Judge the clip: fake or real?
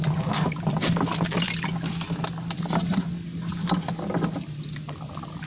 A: real